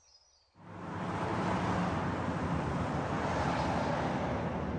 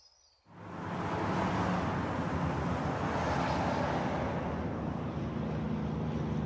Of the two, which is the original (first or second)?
second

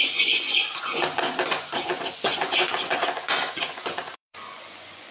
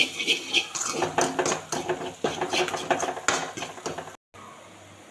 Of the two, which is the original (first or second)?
second